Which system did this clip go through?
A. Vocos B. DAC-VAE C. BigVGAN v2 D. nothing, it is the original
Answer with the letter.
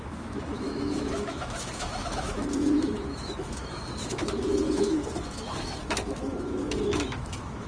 B